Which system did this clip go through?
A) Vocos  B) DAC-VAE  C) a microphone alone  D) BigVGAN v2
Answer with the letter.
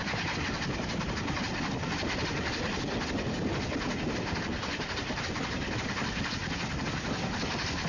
C